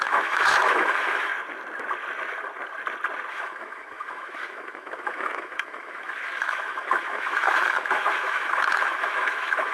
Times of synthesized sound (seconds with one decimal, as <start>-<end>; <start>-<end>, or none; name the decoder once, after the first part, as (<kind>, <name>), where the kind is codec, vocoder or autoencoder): 0.0-1.3 (autoencoder, DAC-VAE); 3.3-9.7